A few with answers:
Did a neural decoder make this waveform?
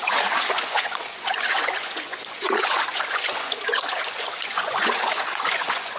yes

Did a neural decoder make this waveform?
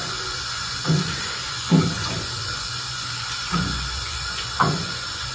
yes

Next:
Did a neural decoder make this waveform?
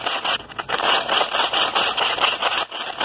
no